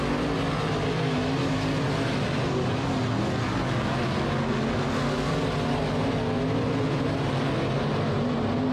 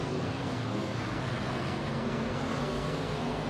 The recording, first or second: first